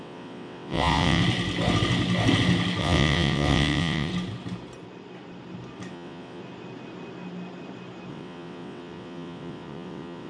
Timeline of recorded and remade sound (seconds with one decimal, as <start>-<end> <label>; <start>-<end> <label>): 0.0-1.2 remade; 1.2-2.8 recorded; 2.8-4.1 remade; 4.1-5.9 recorded; 5.9-6.4 remade; 6.4-8.1 recorded; 8.1-10.3 remade